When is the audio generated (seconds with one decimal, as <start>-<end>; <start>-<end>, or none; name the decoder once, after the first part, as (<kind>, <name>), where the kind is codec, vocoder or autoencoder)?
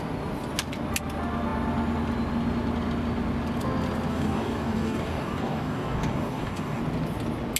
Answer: 4.1-6.8 (codec, DAC)